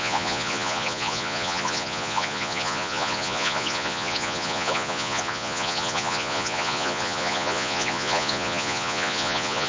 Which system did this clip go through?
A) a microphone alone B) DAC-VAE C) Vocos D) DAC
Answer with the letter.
C